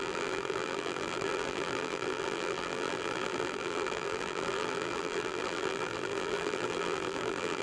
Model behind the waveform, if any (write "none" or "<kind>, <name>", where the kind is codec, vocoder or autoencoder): vocoder, BigVGAN v2